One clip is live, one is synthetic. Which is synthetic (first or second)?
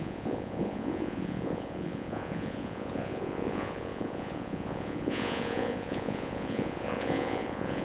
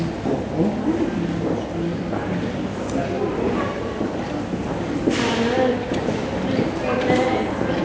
first